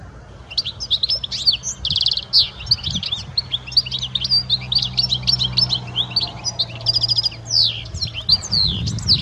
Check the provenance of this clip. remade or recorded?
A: recorded